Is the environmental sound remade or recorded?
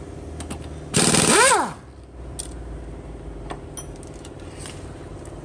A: recorded